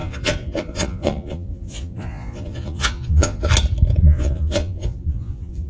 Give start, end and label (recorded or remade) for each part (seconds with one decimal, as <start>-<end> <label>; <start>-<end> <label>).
0.0-3.5 remade; 3.5-4.0 recorded; 4.0-5.7 remade